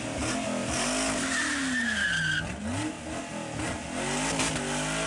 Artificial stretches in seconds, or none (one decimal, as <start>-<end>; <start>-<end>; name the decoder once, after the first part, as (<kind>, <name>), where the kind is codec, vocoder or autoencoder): none